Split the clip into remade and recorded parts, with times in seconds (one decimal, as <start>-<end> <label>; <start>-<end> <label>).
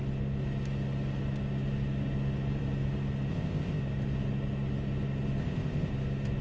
0.0-3.3 recorded; 3.3-3.8 remade; 3.8-5.4 recorded; 5.4-5.9 remade; 5.9-6.4 recorded